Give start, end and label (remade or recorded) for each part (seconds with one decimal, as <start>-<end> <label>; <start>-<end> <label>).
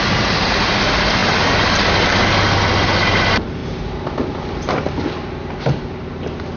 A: 0.0-6.6 recorded